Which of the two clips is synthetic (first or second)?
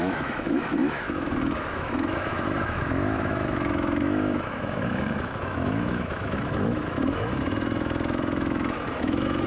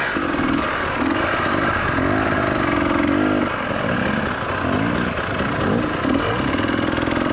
first